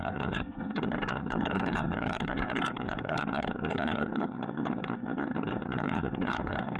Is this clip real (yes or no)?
no